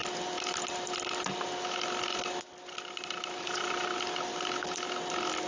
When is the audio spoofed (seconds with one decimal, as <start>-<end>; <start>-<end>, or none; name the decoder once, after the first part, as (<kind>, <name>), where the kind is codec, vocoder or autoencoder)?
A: none